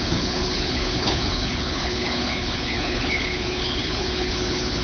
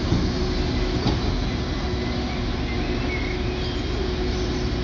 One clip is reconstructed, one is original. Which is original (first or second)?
second